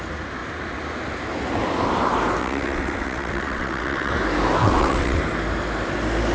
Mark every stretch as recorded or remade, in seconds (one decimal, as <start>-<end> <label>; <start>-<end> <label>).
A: 0.0-2.4 recorded; 2.4-4.1 remade; 4.1-4.6 recorded; 4.6-5.2 remade; 5.2-6.3 recorded